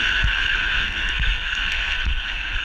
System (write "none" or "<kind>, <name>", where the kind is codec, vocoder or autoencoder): codec, SNAC